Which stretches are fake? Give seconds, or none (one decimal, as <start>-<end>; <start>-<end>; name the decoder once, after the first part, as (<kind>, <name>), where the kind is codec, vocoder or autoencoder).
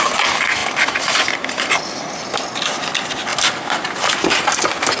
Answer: none